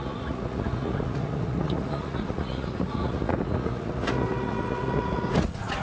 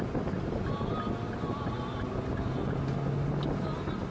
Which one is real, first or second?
second